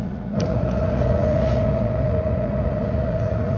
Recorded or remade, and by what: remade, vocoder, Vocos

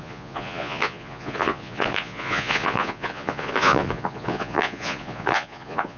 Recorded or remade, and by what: remade, vocoder, Vocos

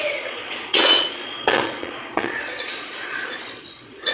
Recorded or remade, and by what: remade, vocoder, Vocos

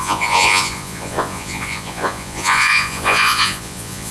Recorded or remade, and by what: remade, vocoder, Vocos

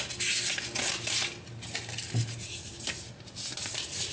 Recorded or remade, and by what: recorded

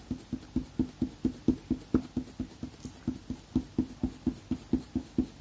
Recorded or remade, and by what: recorded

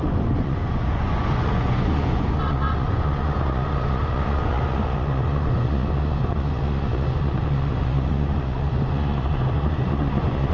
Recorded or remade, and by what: remade, vocoder, Vocos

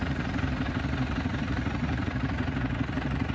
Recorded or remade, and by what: remade, vocoder, Vocos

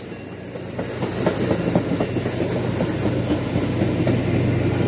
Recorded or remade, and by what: recorded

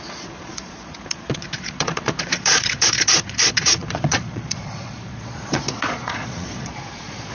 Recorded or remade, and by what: remade, vocoder, Vocos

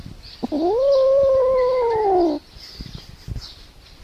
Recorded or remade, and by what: recorded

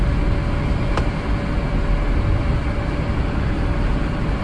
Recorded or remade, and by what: recorded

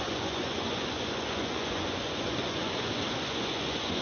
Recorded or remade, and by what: remade, vocoder, Vocos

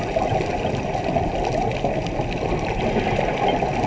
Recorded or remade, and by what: recorded